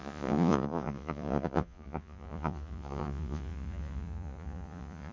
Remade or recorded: remade